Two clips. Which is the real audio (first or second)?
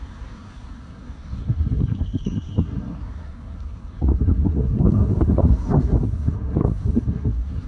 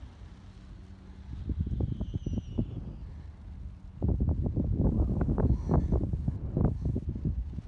second